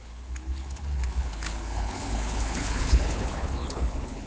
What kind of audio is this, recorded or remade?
remade